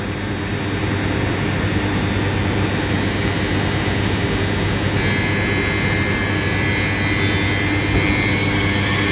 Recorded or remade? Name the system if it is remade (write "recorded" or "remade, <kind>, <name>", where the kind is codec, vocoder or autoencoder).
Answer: recorded